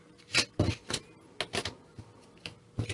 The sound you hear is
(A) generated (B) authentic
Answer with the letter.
B